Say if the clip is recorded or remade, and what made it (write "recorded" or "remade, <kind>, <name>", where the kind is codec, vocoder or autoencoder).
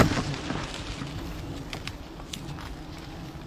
recorded